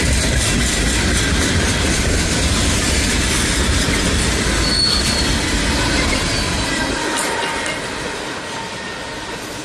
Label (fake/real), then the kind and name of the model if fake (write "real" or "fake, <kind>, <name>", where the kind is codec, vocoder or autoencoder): real